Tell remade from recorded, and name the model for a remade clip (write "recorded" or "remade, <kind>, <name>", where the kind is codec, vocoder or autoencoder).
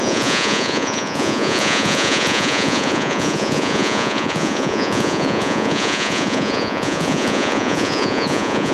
remade, vocoder, Vocos